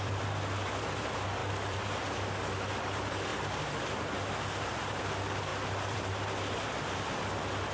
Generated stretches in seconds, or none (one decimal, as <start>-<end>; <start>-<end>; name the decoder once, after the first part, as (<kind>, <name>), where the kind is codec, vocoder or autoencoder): 0.0-7.7 (vocoder, BigVGAN v2)